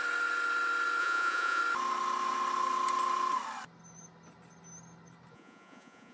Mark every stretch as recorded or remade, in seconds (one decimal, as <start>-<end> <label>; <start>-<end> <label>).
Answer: 0.0-1.0 recorded; 1.0-1.6 remade; 1.6-5.3 recorded; 5.3-6.1 remade